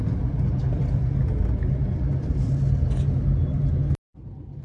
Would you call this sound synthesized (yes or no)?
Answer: no